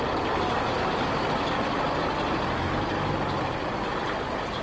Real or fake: real